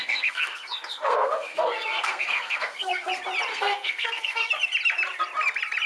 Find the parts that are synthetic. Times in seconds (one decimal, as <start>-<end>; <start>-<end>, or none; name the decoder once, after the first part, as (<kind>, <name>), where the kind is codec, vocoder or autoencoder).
0.0-3.1 (codec, SNAC); 3.5-4.5